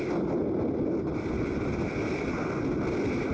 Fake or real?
real